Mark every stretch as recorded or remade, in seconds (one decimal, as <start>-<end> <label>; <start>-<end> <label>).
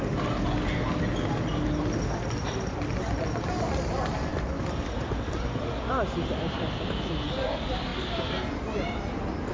0.0-9.5 recorded